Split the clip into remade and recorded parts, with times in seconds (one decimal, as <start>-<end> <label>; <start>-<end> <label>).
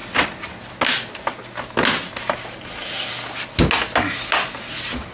0.0-5.1 recorded